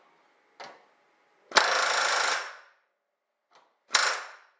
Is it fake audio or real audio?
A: real